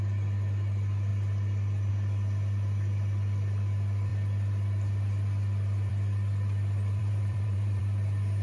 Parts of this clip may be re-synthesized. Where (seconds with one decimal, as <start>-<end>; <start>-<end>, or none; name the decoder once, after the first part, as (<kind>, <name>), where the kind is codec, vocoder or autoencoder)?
7.0-7.8 (vocoder, BigVGAN v2)